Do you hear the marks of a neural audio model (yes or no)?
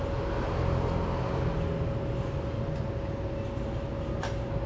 no